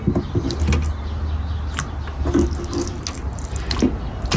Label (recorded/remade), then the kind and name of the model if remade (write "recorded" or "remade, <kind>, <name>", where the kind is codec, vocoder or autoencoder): recorded